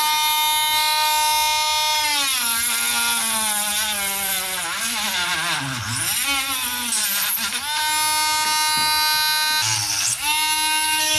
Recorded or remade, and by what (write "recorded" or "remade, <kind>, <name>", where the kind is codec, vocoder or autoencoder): recorded